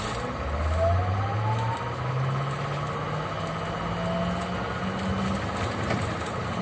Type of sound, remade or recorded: recorded